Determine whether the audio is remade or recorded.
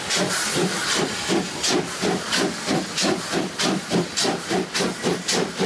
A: recorded